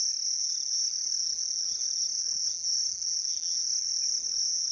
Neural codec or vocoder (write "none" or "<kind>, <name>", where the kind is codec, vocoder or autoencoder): vocoder, BigVGAN v2